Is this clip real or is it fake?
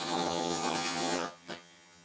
fake